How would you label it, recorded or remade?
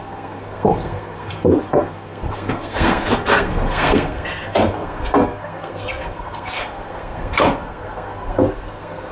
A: remade